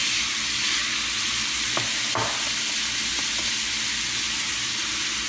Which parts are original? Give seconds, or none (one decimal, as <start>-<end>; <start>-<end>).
0.0-5.3